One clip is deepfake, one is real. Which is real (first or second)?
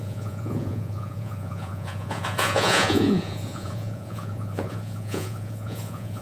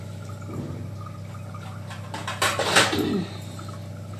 second